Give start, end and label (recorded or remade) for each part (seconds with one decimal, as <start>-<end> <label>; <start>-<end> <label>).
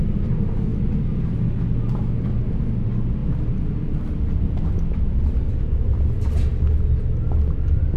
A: 0.0-8.0 recorded